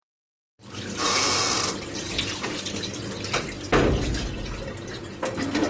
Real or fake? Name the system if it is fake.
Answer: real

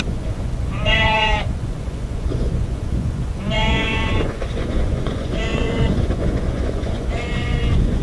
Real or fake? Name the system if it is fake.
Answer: fake, vocoder, Vocos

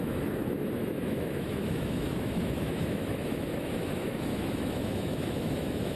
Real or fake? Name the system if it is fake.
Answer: fake, autoencoder, DAC-VAE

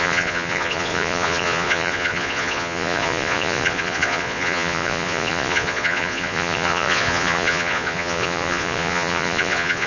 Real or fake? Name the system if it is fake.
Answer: fake, vocoder, Vocos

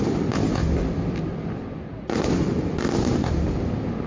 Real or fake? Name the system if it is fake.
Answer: real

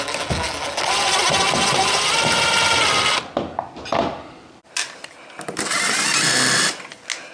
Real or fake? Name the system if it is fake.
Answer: real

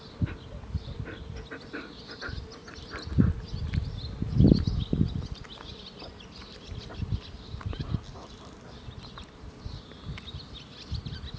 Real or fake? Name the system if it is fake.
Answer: real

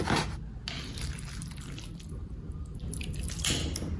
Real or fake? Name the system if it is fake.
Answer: real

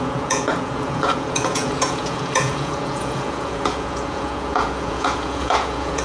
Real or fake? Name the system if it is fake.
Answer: fake, vocoder, Vocos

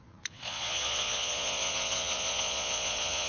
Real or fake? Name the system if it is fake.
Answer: fake, vocoder, Vocos